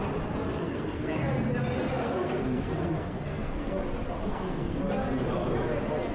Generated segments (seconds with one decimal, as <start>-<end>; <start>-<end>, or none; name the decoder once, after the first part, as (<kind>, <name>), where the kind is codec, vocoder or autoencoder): 0.6-1.3 (codec, SNAC); 1.9-3.8; 4.3-4.8